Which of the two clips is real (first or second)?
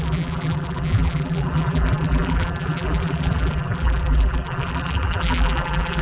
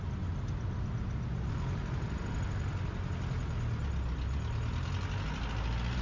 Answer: second